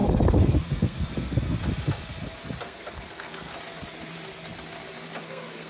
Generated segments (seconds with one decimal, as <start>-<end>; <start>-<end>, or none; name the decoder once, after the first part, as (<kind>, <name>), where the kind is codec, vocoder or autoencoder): 0.0-1.6 (codec, SNAC); 2.6-3.5; 5.2-5.7